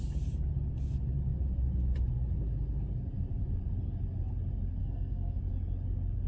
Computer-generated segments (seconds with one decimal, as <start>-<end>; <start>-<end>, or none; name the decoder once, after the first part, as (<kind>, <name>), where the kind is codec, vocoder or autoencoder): 4.8-5.4 (codec, SNAC)